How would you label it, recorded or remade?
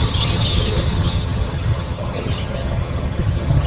remade